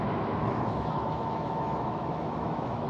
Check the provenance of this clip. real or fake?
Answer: fake